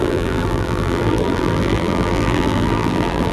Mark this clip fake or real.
fake